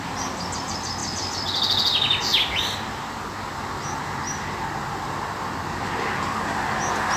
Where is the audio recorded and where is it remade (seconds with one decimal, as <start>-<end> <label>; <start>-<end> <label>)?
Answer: 0.0-7.2 recorded

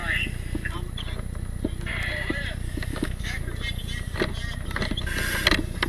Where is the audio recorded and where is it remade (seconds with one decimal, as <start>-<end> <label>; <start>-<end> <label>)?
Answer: 0.0-2.9 recorded; 2.9-3.4 remade; 3.4-5.9 recorded

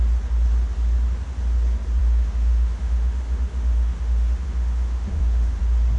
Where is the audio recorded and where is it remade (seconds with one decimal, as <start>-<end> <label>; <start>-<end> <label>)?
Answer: 0.0-2.0 recorded; 2.0-5.6 remade; 5.6-6.0 recorded

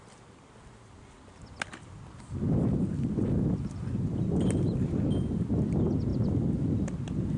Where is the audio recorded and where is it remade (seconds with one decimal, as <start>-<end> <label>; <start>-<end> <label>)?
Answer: 0.0-7.4 recorded

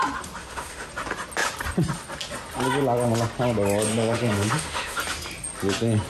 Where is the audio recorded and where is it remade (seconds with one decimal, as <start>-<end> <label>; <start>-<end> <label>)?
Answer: 0.0-0.4 recorded; 0.4-0.9 remade; 0.9-3.9 recorded; 3.9-5.0 remade; 5.0-6.1 recorded